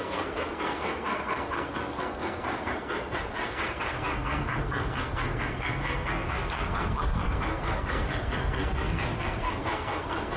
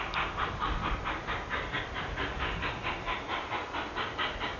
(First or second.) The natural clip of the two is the second